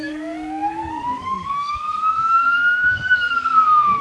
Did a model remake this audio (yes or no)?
yes